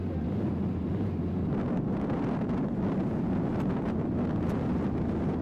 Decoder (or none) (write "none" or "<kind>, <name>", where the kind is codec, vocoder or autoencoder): none